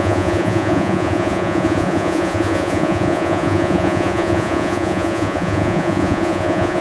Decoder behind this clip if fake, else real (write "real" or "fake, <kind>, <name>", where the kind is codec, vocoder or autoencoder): fake, vocoder, Vocos